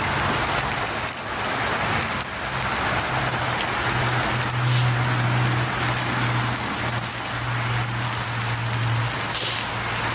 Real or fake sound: real